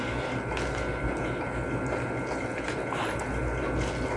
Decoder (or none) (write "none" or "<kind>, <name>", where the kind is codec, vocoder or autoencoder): none